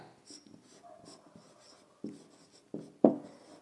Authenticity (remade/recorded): recorded